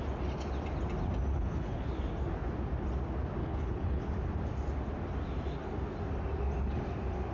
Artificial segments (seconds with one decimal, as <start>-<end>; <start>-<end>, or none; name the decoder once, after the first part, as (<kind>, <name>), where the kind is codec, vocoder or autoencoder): 1.3-1.9 (codec, HILCodec); 3.4-4.0